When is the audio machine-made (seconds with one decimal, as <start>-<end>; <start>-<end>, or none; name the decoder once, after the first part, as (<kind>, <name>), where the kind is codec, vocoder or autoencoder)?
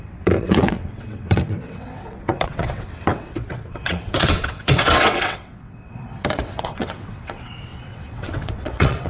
0.0-9.1 (vocoder, WaveNeXt)